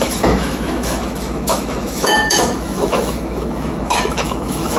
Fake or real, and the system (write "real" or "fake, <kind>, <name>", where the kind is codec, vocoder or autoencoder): fake, autoencoder, DAC-VAE